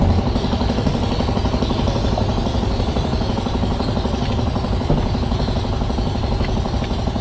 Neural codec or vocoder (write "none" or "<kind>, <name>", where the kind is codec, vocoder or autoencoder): none